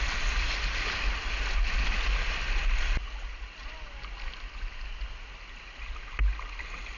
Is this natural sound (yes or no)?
yes